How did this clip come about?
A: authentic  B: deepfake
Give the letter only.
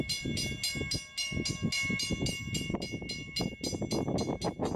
A